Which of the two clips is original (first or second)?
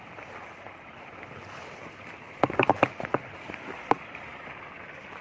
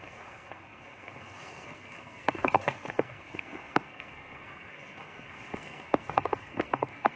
first